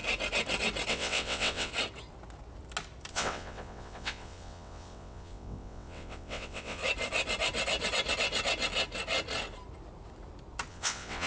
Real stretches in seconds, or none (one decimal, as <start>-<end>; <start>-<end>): 0.0-0.9; 1.7-3.1; 6.8-10.7